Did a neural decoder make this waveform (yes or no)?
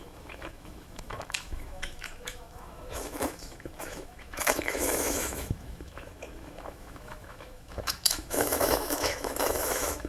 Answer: yes